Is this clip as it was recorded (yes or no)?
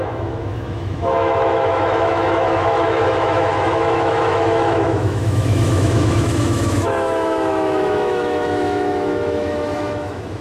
no